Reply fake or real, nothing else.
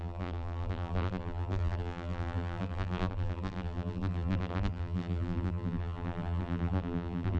fake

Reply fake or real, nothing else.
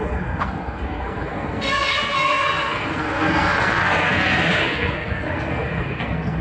fake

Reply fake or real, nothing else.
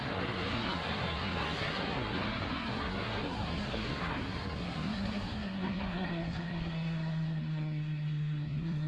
fake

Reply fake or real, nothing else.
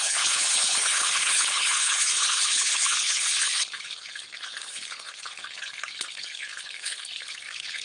fake